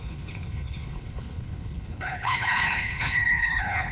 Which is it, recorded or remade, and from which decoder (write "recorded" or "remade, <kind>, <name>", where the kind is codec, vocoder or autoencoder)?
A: remade, codec, HILCodec